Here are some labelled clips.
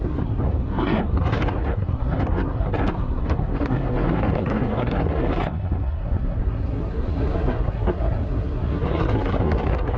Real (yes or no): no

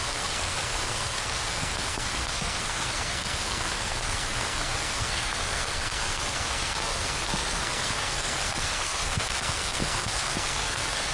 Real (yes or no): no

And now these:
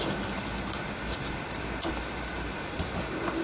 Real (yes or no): yes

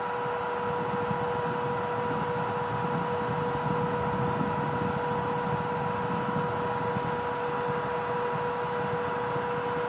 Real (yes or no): yes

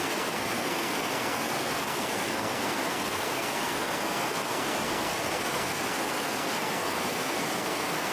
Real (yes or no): no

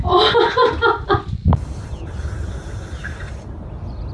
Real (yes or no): yes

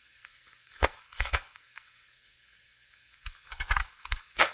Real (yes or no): no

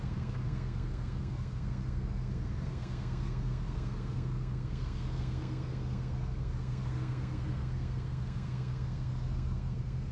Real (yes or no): no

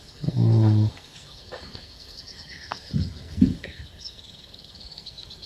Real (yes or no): no